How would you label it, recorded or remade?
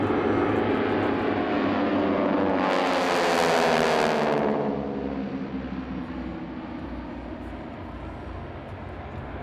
recorded